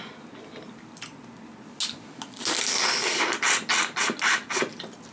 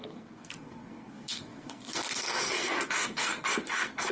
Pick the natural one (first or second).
first